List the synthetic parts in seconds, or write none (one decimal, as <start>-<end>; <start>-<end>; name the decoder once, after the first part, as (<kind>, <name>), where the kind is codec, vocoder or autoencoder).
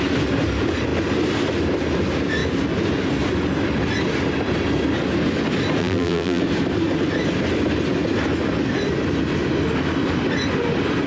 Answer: 5.8-6.4 (vocoder, BigVGAN v2)